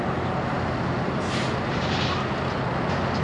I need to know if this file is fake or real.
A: real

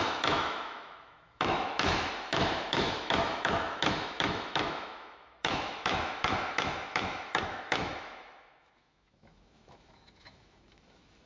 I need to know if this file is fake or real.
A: fake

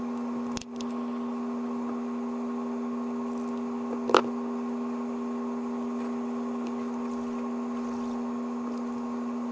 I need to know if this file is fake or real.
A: real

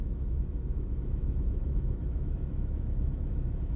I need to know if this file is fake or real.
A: fake